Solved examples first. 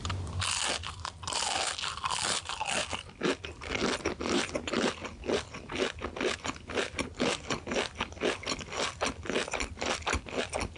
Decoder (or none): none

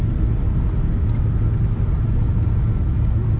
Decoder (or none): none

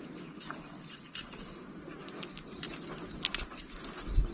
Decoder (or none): none